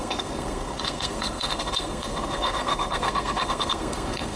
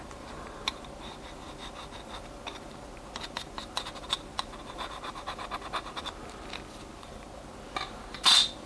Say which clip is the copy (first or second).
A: first